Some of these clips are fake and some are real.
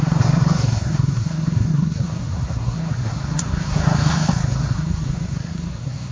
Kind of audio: fake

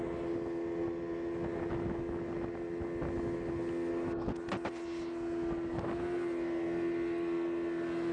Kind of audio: real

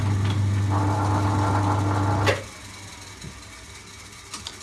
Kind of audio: real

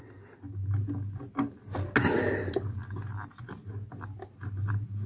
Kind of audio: real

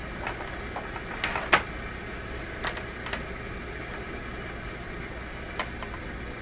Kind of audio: real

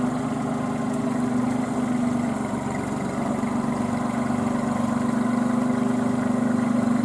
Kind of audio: real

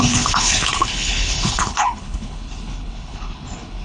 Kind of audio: fake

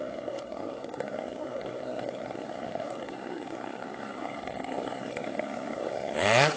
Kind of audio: fake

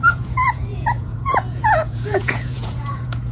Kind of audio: fake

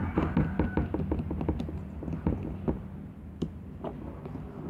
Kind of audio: real